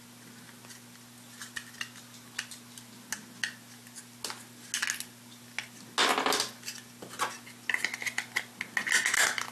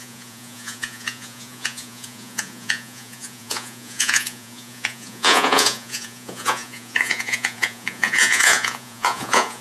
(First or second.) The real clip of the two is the first